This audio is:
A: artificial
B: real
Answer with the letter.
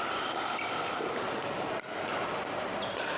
B